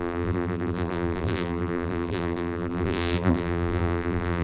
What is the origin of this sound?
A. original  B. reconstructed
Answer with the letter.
B